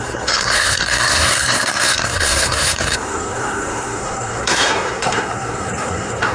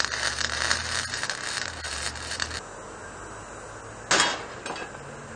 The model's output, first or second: first